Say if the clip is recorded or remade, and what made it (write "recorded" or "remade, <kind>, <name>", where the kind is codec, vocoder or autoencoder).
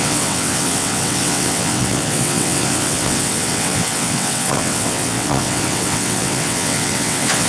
remade, vocoder, WaveNeXt